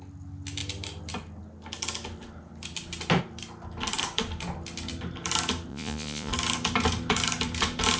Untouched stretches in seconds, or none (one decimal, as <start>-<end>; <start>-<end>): 0.0-5.7; 6.3-8.0